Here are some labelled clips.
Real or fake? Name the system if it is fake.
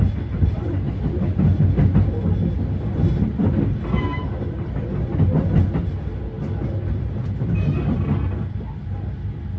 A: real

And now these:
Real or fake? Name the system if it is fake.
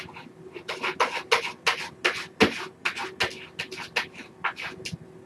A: real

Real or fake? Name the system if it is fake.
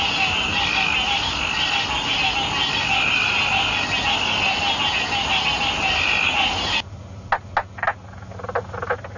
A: real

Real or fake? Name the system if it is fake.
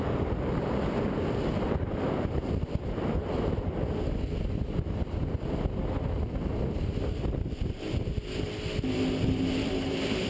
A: real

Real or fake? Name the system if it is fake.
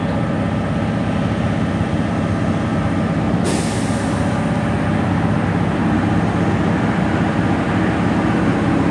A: real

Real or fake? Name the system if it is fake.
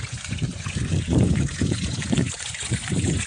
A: fake, vocoder, Vocos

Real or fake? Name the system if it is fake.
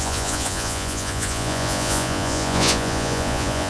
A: fake, vocoder, Vocos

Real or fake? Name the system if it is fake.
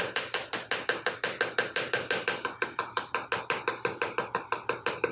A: real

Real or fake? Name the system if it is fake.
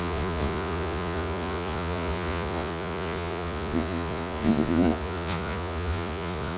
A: fake, vocoder, Vocos